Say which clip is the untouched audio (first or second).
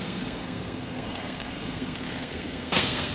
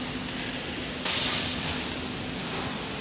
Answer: second